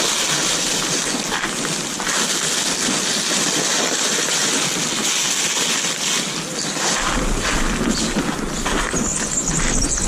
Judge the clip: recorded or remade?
recorded